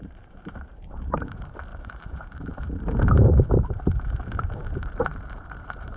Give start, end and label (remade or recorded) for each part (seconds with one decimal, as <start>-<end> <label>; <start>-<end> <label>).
0.0-6.0 remade

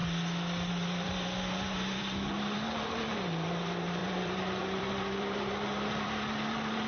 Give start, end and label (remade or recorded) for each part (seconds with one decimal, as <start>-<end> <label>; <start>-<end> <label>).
0.0-0.7 recorded; 0.7-6.9 remade

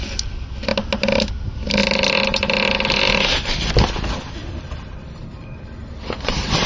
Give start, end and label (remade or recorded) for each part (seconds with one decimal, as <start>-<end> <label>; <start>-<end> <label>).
0.0-5.2 recorded; 5.2-6.7 remade

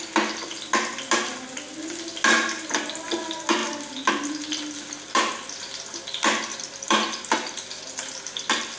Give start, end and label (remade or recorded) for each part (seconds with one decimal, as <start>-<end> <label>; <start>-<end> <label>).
0.0-6.5 recorded; 6.5-8.8 remade

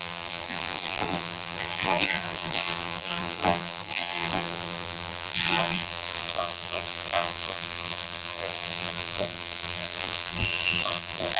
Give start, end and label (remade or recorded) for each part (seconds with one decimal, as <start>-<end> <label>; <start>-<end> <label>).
0.0-11.4 remade